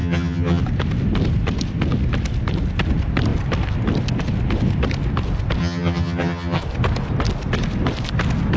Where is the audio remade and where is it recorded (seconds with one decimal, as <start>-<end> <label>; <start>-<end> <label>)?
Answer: 0.0-0.6 remade; 0.6-5.6 recorded; 5.6-6.6 remade; 6.6-8.6 recorded